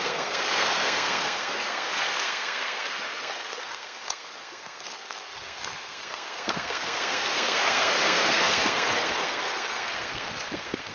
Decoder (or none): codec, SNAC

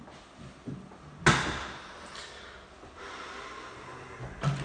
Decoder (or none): none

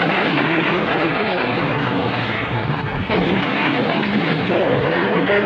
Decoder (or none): codec, SNAC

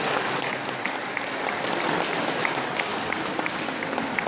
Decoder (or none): none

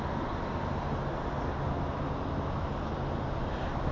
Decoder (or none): none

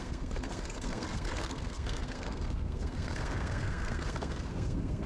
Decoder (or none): codec, SNAC